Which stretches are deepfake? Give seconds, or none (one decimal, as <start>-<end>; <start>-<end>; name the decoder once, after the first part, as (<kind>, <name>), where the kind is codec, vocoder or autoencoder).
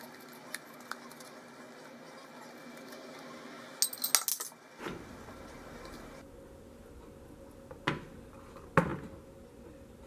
none